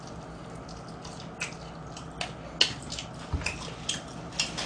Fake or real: real